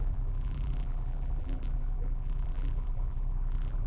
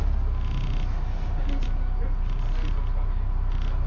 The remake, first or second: first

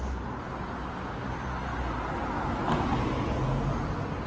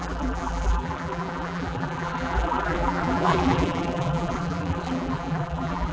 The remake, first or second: second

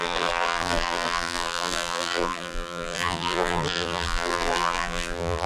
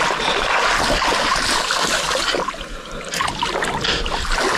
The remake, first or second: first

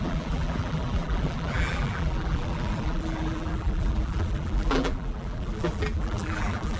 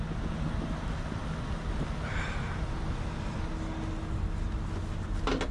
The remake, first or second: first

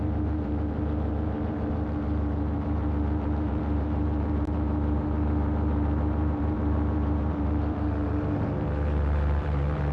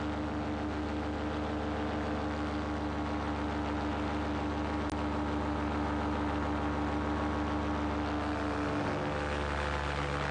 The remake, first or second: first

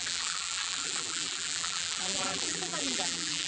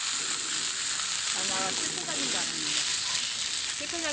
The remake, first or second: first